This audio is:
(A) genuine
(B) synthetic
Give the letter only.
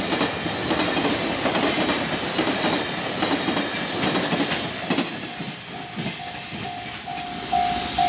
A